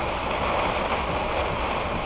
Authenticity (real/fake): real